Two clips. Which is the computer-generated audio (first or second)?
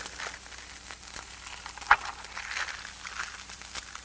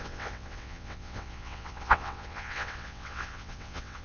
second